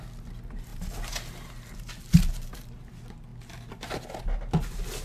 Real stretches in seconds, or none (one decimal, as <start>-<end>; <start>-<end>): 0.0-5.0